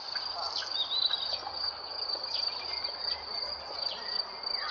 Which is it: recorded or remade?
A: recorded